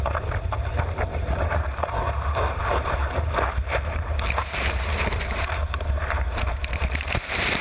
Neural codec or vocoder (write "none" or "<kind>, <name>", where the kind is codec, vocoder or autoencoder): vocoder, BigVGAN v2